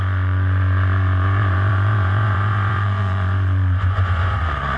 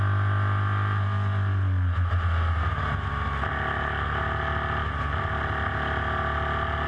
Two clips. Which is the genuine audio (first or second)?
second